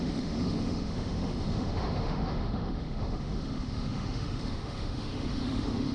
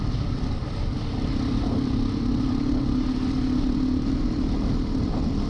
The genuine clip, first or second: second